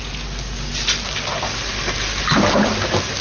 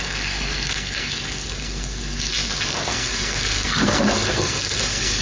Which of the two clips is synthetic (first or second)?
second